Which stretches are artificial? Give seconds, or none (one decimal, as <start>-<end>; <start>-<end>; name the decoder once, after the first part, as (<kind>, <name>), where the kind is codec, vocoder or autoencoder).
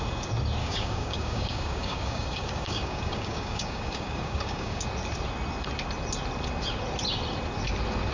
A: 0.6-4.8 (codec, DAC)